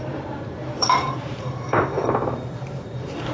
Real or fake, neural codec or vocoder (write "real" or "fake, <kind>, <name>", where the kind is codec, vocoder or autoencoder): fake, vocoder, BigVGAN v2